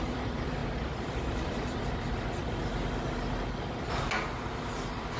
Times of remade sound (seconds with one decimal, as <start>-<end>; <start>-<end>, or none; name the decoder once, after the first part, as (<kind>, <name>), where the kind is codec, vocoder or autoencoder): 0.0-2.4 (vocoder, BigVGAN v2); 4.5-5.2